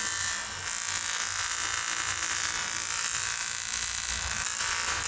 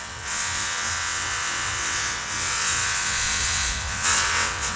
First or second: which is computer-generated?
second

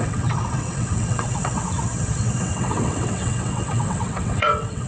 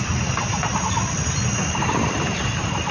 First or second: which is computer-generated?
first